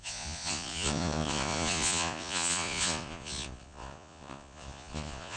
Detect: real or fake fake